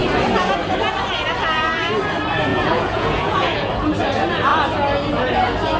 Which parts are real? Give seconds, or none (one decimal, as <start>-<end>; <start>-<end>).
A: 0.0-2.5; 3.7-5.8